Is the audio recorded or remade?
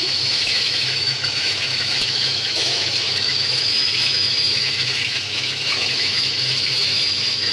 remade